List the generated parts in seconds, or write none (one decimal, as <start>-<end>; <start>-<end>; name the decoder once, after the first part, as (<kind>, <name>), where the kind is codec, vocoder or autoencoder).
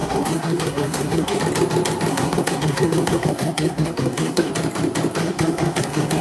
0.0-1.4 (codec, SNAC); 2.1-4.5; 5.2-6.2